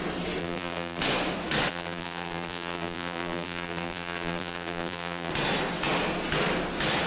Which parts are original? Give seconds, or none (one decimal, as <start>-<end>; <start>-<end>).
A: 0.0-0.4; 1.0-1.7; 5.3-7.1